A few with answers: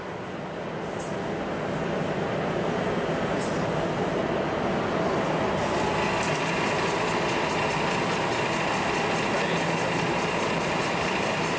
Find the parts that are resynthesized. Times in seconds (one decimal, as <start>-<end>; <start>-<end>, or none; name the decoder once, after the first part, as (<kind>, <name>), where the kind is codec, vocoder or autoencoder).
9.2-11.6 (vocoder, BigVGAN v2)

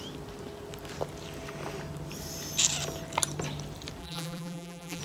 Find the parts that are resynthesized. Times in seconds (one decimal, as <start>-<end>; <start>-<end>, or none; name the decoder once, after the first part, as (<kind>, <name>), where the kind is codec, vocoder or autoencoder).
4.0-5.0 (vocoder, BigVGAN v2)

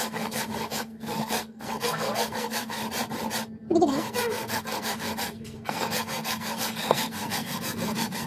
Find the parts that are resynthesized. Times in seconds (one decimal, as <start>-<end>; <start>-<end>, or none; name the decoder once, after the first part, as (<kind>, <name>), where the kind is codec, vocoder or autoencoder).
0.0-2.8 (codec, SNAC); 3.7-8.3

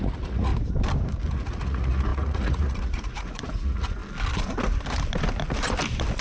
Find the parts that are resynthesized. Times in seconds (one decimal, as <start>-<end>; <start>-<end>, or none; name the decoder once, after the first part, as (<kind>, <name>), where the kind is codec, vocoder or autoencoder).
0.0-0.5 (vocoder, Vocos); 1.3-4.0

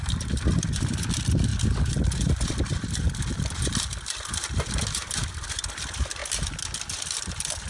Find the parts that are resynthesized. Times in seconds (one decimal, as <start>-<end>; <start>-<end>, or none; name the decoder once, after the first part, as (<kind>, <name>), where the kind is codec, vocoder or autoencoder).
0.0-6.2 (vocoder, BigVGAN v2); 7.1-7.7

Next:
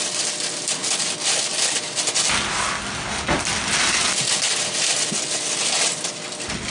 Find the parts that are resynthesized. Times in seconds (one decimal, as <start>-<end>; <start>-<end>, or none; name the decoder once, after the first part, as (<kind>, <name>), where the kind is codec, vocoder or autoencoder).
none

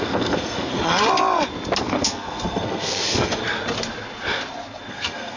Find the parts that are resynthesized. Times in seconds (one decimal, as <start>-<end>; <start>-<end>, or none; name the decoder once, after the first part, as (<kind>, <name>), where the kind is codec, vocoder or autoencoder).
0.0-0.8 (codec, SNAC); 1.8-3.4; 4.9-5.4